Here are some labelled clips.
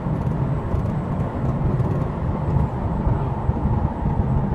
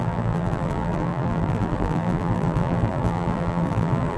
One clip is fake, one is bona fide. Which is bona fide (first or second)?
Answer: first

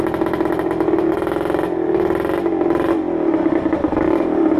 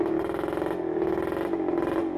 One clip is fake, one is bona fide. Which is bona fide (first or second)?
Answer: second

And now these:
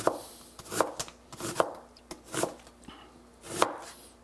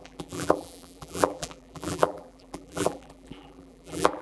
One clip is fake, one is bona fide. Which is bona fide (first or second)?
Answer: first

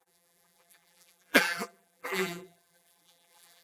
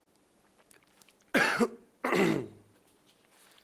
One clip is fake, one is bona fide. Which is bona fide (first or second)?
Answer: second